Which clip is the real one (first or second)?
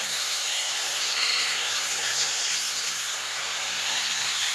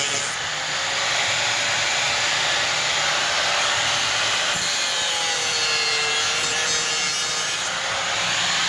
second